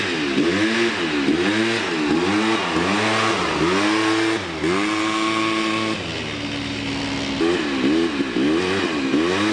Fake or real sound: real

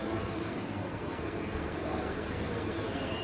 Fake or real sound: fake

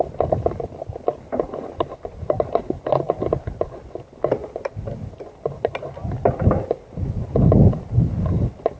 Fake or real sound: real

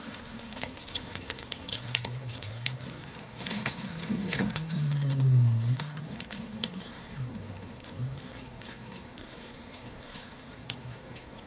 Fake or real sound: fake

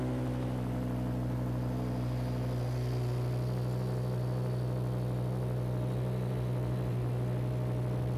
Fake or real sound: real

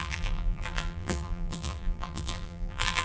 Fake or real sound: fake